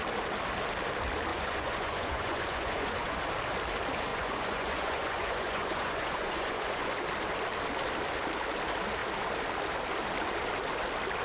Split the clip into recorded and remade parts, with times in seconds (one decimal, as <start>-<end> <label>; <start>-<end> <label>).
0.0-1.3 recorded; 1.3-3.2 remade; 3.2-4.1 recorded; 4.1-7.0 remade; 7.0-11.2 recorded